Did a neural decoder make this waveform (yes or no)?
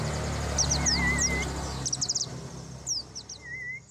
no